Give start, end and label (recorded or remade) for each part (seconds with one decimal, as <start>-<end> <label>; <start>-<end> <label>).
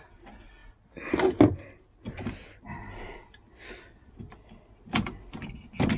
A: 0.0-6.0 recorded